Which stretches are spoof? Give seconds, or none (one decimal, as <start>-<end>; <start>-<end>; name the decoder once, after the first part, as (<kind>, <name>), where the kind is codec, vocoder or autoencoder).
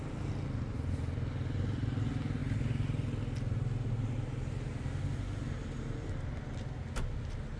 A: none